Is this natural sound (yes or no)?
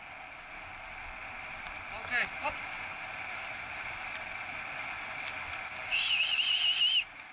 yes